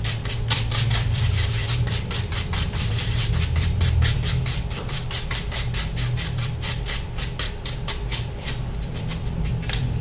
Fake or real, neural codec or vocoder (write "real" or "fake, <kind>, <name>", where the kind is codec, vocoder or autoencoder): fake, vocoder, BigVGAN v2